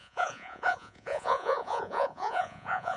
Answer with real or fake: fake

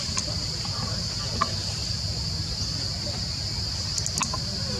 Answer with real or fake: real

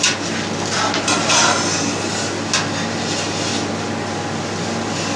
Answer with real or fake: real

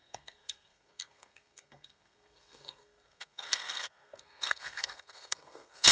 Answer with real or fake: fake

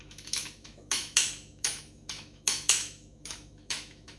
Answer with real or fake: fake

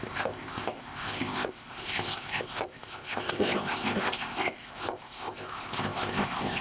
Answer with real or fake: fake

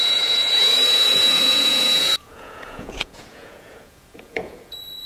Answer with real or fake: fake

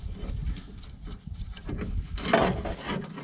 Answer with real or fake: real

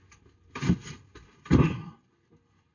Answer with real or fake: real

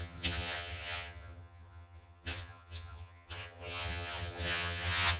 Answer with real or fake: fake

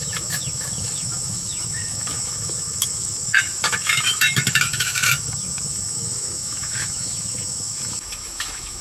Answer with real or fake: fake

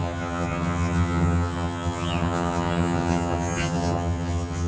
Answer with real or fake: fake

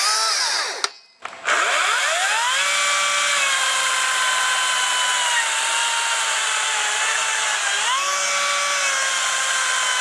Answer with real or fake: real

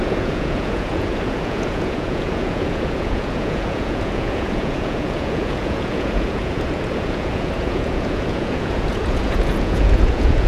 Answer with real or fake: fake